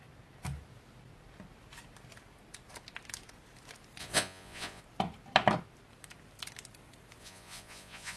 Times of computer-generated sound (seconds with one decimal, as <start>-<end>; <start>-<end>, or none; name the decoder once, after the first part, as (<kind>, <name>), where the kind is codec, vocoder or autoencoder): 4.0-4.8 (vocoder, Vocos); 7.2-8.2